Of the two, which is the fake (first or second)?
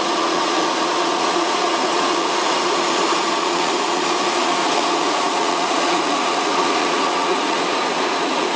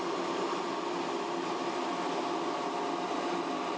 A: first